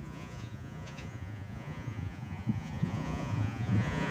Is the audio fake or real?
fake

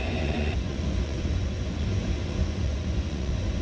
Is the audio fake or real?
fake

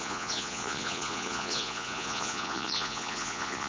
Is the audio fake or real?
fake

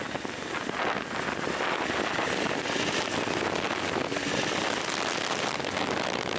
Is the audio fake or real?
real